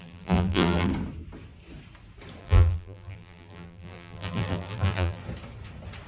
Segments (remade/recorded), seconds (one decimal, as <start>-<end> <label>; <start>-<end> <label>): 0.0-0.9 remade; 0.9-2.4 recorded; 2.4-5.2 remade; 5.2-6.1 recorded